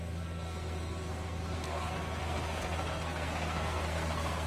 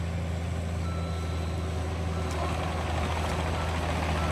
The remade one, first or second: first